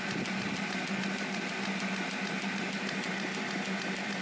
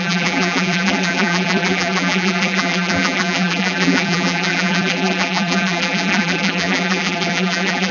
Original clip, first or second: first